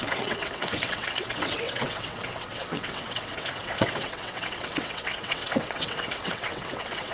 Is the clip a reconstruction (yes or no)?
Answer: yes